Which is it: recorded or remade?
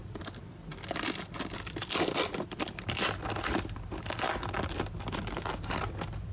recorded